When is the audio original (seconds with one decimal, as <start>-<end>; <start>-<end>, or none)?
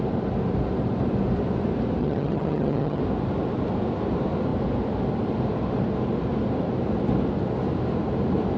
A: 0.0-2.0; 3.0-8.6